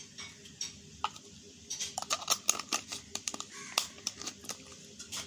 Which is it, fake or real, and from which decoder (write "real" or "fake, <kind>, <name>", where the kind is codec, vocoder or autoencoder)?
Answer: real